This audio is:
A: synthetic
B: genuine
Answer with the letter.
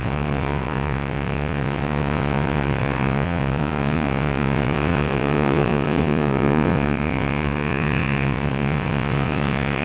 A